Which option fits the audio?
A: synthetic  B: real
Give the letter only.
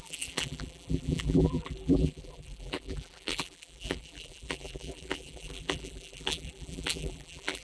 A